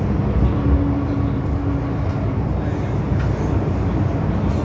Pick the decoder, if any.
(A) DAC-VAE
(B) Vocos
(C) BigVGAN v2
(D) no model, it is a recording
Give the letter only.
D